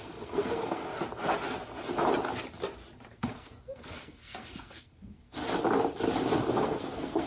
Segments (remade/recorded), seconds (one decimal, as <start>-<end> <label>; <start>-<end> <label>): 0.0-0.8 remade; 0.8-3.1 recorded; 3.1-5.4 remade; 5.4-6.6 recorded; 6.6-7.3 remade